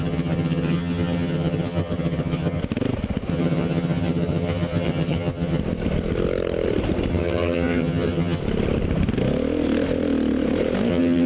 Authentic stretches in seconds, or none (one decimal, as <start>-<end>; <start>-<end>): 2.6-3.3; 5.6-7.1; 8.4-10.9